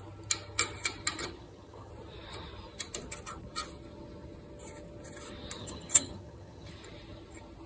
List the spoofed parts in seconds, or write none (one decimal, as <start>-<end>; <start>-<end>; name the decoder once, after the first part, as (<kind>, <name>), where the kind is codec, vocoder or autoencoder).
1.2-1.9 (vocoder, HiFi-GAN); 5.6-6.7